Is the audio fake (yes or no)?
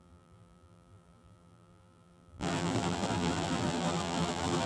yes